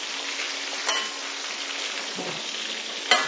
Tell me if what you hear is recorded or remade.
recorded